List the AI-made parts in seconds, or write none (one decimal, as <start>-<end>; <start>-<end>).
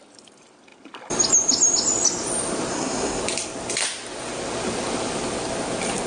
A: 2.7-3.2